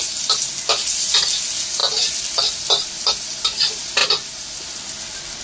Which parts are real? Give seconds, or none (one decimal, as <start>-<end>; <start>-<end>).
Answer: 0.0-5.4